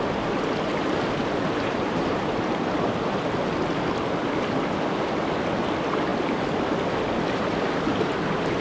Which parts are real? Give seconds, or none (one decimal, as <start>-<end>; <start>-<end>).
0.0-1.2; 2.6-8.6